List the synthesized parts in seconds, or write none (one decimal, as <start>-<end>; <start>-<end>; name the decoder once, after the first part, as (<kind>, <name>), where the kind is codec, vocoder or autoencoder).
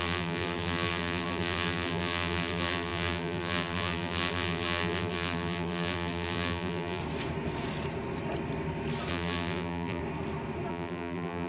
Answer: 0.0-7.0 (vocoder, BigVGAN v2); 9.1-10.0; 10.7-11.5